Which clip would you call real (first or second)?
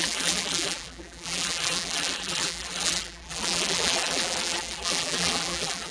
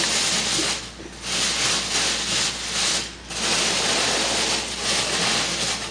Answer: second